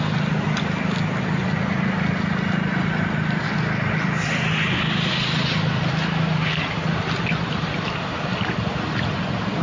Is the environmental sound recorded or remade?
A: recorded